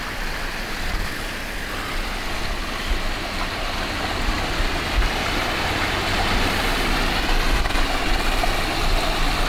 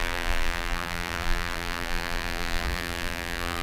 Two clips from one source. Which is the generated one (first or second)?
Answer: second